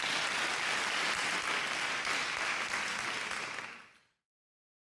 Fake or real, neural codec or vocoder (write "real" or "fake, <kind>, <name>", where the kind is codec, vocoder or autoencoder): real